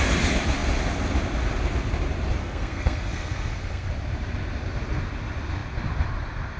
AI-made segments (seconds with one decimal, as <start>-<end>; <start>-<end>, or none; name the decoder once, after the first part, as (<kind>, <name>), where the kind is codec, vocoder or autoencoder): 2.4-3.9 (codec, SNAC)